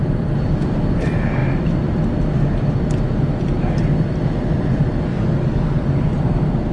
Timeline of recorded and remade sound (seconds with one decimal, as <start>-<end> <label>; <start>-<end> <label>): 0.0-5.1 recorded; 5.1-5.8 remade; 5.8-6.7 recorded

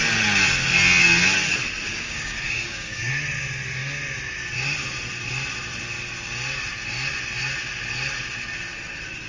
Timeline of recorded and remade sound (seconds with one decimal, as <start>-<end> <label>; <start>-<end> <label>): 0.0-1.9 recorded; 1.9-3.1 remade; 3.1-9.3 recorded

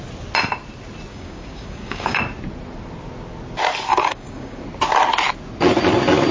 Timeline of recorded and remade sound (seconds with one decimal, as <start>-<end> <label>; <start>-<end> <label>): 0.0-1.1 recorded; 1.1-2.2 remade; 2.2-3.9 recorded; 3.9-4.6 remade; 4.6-6.3 recorded

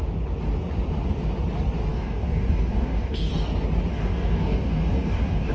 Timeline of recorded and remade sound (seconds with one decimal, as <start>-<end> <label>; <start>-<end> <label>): 0.0-1.9 recorded; 1.9-3.3 remade; 3.3-3.9 recorded; 3.9-5.5 remade

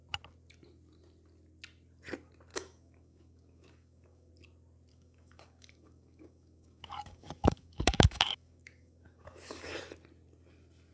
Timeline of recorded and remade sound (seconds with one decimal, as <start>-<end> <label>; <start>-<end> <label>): 0.0-2.5 recorded; 2.5-4.3 remade; 4.3-4.9 recorded; 4.9-9.8 remade; 9.8-10.9 recorded

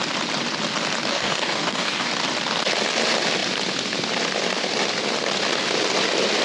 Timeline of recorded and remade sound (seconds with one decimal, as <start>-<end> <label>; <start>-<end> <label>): 0.0-1.1 recorded; 1.1-2.1 remade; 2.1-6.4 recorded

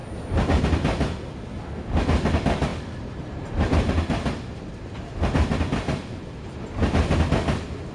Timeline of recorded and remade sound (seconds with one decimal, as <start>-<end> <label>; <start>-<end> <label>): 0.0-7.9 recorded

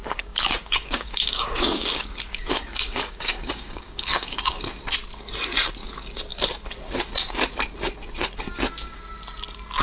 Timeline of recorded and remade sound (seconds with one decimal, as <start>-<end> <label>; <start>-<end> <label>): 0.0-4.6 remade; 4.6-9.8 recorded